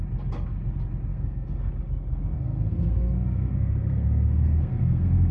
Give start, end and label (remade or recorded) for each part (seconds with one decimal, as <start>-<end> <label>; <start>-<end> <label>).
0.0-1.1 recorded; 1.1-1.7 remade; 1.7-2.1 recorded; 2.1-5.3 remade